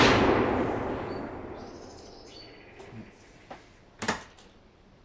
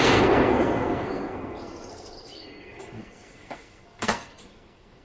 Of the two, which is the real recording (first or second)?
first